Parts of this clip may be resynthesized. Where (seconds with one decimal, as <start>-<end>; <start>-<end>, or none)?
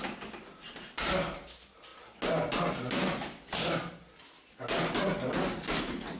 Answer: none